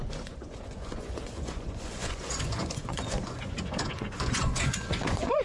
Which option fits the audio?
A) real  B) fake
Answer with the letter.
B